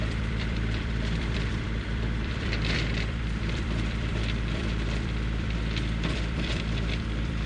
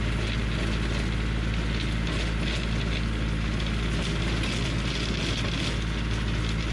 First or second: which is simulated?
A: first